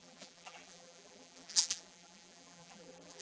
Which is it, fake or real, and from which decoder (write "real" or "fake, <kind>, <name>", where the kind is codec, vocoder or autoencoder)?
fake, vocoder, BigVGAN v2